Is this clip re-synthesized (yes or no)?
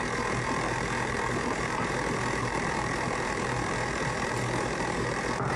yes